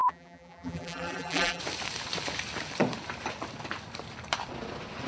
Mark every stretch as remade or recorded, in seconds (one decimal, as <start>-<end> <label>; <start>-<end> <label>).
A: 0.0-1.6 remade; 1.6-5.1 recorded